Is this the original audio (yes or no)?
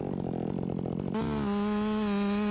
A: yes